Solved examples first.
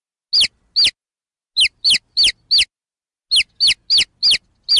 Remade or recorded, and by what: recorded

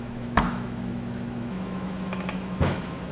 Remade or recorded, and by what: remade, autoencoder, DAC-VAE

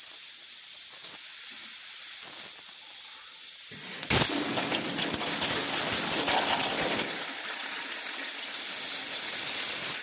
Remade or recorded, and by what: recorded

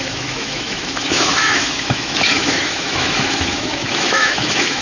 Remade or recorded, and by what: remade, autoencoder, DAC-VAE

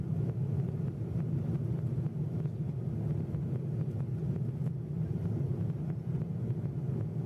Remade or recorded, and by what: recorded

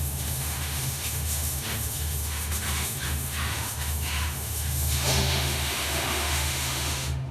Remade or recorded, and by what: remade, autoencoder, DAC-VAE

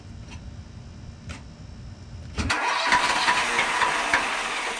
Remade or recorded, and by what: recorded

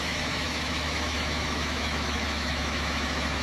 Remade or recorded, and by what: remade, autoencoder, DAC-VAE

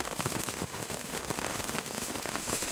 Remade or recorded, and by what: remade, autoencoder, DAC-VAE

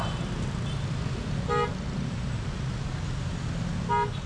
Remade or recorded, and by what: recorded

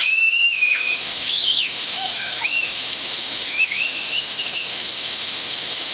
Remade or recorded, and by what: remade, autoencoder, DAC-VAE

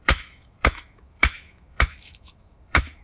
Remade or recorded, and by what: remade, autoencoder, DAC-VAE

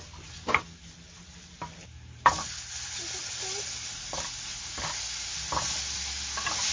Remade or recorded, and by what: recorded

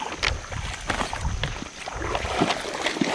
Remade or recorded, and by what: recorded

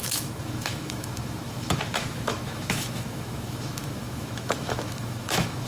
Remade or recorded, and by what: remade, autoencoder, DAC-VAE